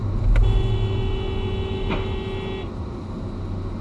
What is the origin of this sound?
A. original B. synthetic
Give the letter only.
A